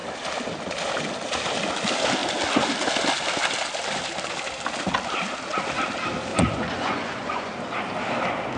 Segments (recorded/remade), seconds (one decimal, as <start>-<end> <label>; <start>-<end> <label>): 0.0-6.3 recorded; 6.3-7.5 remade; 7.5-8.6 recorded